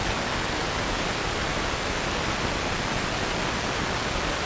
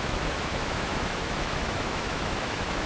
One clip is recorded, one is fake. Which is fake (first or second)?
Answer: second